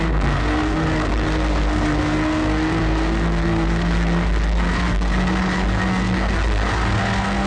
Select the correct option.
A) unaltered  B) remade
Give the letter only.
B